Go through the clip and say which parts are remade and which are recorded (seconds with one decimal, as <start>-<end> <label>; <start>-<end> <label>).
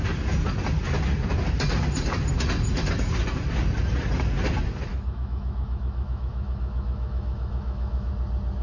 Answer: 0.0-4.9 recorded; 4.9-8.1 remade; 8.1-8.6 recorded